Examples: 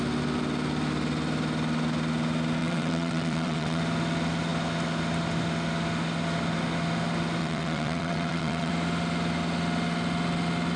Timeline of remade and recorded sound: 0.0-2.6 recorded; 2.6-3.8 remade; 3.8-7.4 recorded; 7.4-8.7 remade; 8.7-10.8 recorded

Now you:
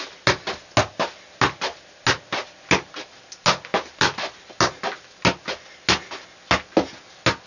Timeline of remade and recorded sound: 0.0-7.5 recorded

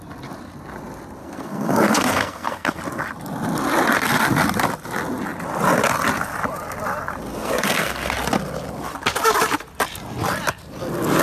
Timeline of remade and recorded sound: 0.0-1.2 recorded; 1.2-2.8 remade; 2.8-7.3 recorded; 7.3-8.1 remade; 8.1-11.2 recorded

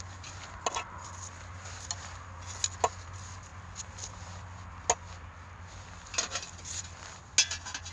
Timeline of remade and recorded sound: 0.0-7.9 recorded

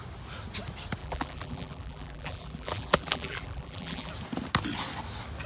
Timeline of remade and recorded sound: 0.0-1.0 recorded; 1.0-4.1 remade; 4.1-5.5 recorded